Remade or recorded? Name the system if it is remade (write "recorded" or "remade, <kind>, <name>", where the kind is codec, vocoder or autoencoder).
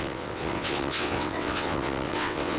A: remade, vocoder, WaveNeXt